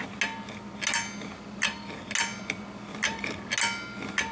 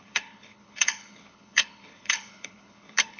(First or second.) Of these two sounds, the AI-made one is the second